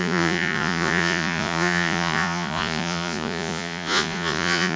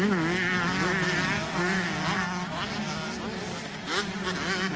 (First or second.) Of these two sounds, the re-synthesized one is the first